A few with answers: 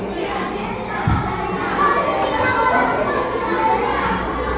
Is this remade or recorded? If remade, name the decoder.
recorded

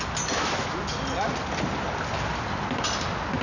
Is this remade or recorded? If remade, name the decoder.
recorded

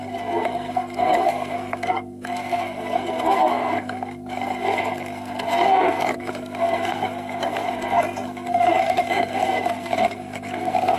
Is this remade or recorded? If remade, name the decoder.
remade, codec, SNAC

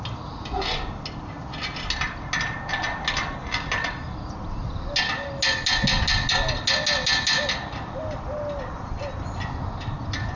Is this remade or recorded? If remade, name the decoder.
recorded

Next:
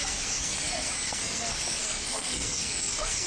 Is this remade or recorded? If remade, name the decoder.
remade, codec, SNAC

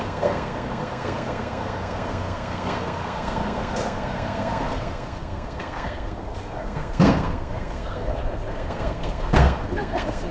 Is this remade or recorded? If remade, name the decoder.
remade, codec, SNAC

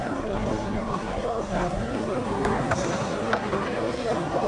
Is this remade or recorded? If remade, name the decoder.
remade, codec, SNAC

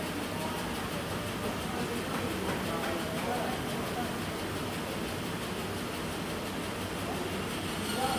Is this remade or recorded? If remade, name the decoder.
recorded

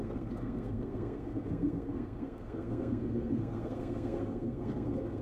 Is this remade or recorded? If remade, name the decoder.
remade, codec, SNAC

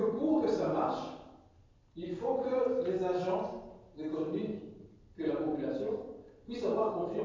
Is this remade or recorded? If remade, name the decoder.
recorded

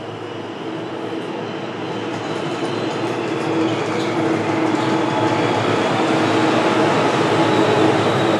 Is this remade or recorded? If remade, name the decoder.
recorded